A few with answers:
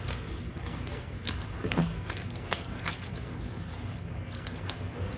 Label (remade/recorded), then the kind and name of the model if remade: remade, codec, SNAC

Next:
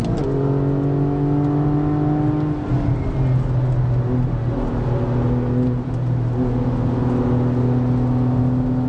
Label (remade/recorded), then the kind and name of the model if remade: recorded